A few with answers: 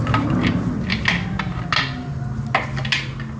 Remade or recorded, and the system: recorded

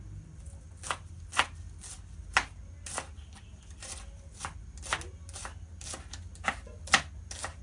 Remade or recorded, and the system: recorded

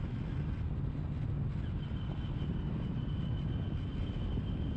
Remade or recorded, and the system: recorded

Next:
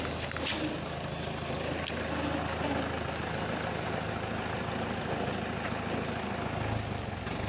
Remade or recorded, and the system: recorded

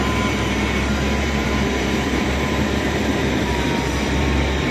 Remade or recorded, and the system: remade, vocoder, BigVGAN v2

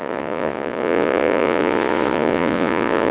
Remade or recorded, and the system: remade, vocoder, Vocos